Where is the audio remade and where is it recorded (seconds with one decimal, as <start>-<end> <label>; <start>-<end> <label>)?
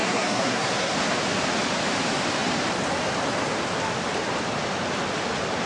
0.0-0.9 remade; 0.9-5.7 recorded